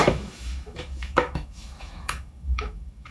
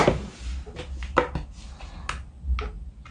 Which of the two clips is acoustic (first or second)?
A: second